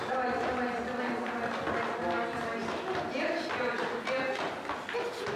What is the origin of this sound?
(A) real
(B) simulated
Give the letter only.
A